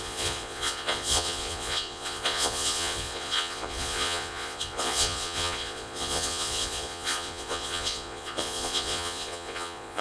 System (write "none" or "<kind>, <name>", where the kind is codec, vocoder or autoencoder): vocoder, Vocos